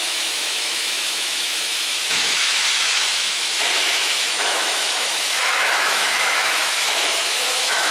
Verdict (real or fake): fake